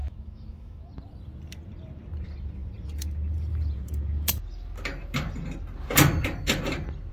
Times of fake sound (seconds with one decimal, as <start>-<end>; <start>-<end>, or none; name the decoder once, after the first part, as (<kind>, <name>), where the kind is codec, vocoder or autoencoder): 0.0-0.9 (autoencoder, DAC-VAE)